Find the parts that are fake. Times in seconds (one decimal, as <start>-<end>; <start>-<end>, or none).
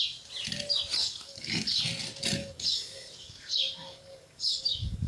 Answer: 1.0-1.8; 2.4-5.1